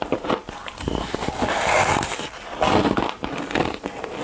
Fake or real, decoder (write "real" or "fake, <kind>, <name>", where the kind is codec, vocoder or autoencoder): real